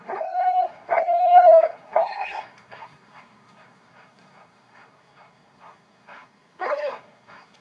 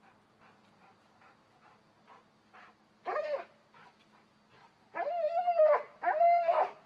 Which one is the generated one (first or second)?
first